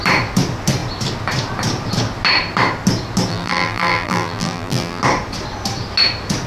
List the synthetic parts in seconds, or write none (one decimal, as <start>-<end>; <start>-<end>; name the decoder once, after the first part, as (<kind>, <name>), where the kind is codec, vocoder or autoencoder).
3.3-5.0 (vocoder, BigVGAN v2)